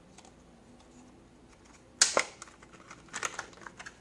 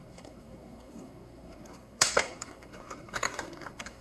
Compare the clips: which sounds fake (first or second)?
second